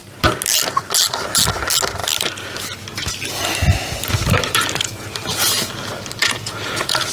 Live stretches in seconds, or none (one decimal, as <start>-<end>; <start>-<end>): 0.0-6.2